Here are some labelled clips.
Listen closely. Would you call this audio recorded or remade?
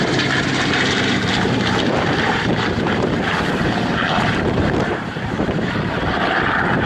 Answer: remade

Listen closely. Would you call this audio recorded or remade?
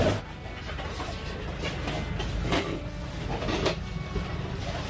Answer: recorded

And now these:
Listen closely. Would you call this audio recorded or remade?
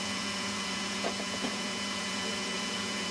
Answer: remade